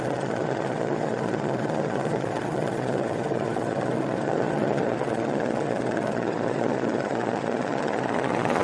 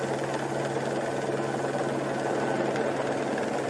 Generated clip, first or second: first